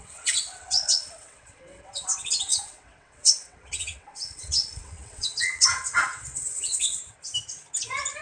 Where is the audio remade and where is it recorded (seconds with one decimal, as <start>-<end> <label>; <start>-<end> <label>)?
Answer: 0.0-7.0 remade; 7.0-8.2 recorded